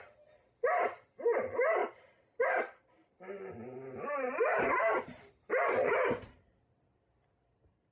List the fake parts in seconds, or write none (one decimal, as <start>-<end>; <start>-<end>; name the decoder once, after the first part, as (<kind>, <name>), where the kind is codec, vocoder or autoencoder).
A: none